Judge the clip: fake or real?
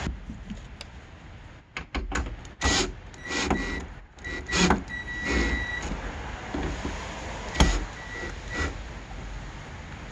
real